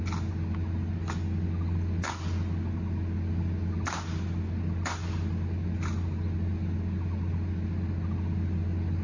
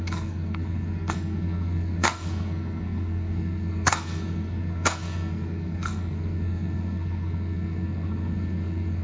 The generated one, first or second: second